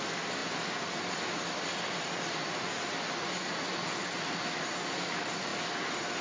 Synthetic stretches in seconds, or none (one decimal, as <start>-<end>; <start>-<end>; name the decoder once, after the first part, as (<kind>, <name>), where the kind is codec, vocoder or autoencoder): none